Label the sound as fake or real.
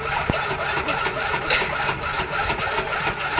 real